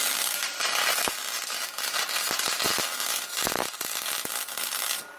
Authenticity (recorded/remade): recorded